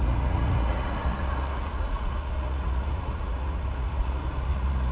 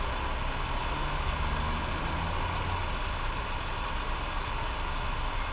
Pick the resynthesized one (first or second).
first